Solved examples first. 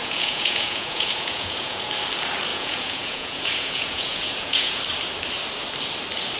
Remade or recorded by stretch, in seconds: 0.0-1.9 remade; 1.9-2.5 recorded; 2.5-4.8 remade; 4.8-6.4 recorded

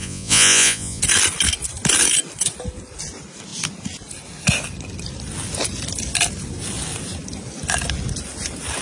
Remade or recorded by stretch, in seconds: 0.0-1.0 remade; 1.0-8.8 recorded

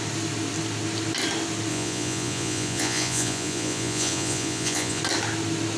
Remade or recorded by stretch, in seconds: 0.0-1.7 recorded; 1.7-5.0 remade; 5.0-5.8 recorded

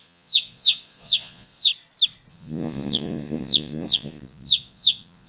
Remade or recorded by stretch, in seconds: 0.0-1.7 remade; 1.7-2.3 recorded; 2.3-5.3 remade

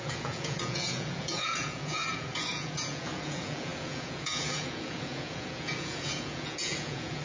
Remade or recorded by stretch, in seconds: 0.0-7.2 remade

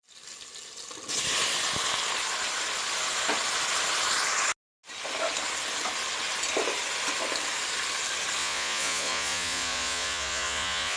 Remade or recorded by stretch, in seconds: 0.0-8.4 recorded; 8.4-11.0 remade

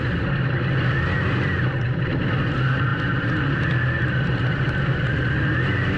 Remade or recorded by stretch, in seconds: 0.0-6.0 recorded